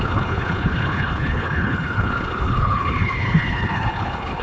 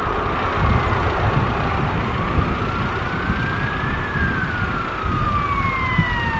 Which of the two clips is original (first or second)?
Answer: second